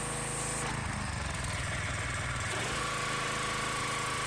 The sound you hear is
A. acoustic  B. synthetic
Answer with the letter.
A